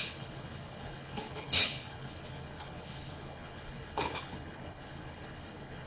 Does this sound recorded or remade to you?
remade